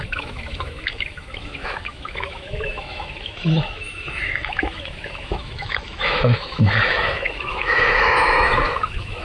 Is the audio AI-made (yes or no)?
yes